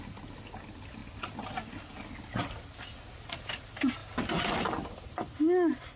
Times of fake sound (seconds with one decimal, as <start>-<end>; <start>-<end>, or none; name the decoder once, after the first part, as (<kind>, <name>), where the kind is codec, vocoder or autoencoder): none